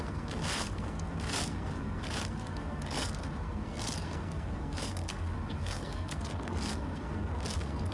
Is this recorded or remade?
remade